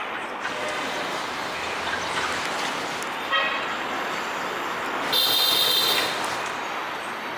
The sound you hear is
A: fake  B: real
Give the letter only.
B